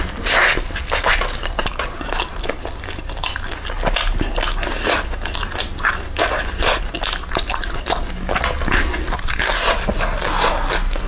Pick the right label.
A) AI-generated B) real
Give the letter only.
B